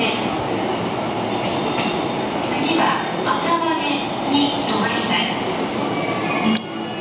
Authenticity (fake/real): real